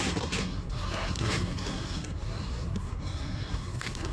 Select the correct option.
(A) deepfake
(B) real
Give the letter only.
A